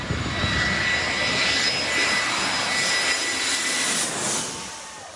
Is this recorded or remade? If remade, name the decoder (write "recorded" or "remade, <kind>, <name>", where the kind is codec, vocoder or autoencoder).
recorded